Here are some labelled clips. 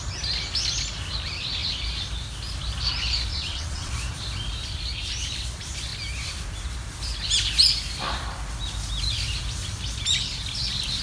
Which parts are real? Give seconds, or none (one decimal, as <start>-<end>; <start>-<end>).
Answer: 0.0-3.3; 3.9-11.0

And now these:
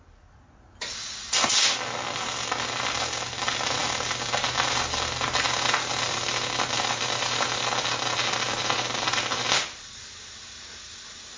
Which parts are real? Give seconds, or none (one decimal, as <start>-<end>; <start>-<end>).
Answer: 0.0-11.4

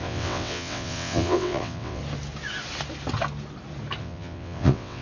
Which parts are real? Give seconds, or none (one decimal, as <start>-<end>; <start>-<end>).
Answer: 2.0-4.0

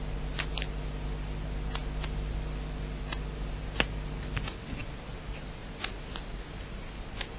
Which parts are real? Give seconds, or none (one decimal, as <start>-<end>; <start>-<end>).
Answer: 0.0-7.4